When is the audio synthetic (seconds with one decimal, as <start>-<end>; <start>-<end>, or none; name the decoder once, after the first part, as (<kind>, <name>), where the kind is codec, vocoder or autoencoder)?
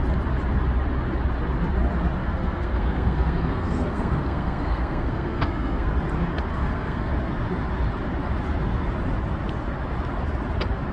2.2-5.9 (codec, SNAC); 6.5-7.1